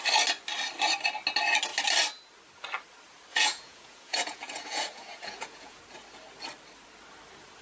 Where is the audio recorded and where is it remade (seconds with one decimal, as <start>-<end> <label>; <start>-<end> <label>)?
0.0-3.3 recorded; 3.3-5.8 remade; 5.8-7.6 recorded